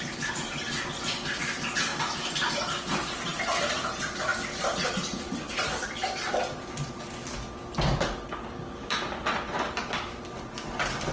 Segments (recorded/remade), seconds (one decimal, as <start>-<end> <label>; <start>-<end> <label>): 0.0-11.1 recorded